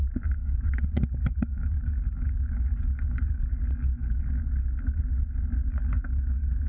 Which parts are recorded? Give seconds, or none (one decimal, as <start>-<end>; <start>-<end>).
0.0-0.4; 4.4-5.7